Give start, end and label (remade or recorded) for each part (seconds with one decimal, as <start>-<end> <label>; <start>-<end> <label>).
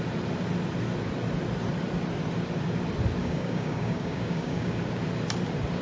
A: 0.0-3.2 recorded; 3.2-4.8 remade; 4.8-5.8 recorded